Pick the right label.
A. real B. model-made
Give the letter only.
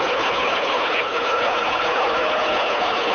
B